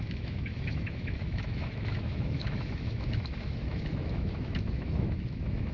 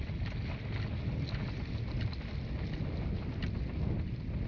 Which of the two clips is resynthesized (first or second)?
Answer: first